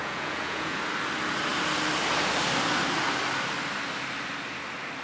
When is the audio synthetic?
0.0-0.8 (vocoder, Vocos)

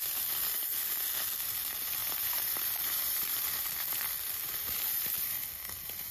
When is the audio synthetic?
2.0-6.1 (vocoder, BigVGAN v2)

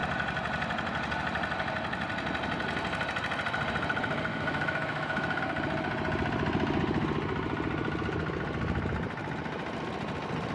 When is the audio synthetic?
4.3-5.4 (autoencoder, DAC-VAE)

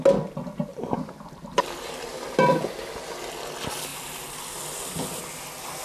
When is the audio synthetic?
0.7-2.9 (vocoder, BigVGAN v2); 3.9-5.2

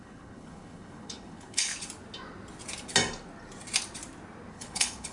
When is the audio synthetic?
0.0-1.7 (codec, HILCodec); 4.5-5.1